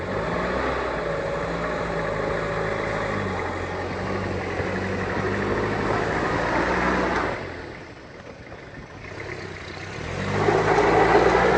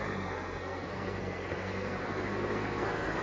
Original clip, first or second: first